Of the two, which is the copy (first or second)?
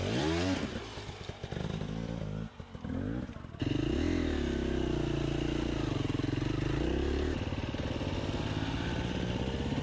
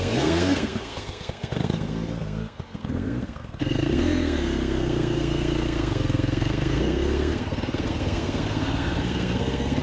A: second